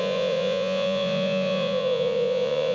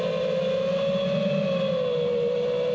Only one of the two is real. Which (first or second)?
second